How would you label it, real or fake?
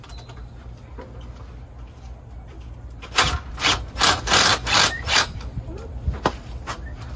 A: real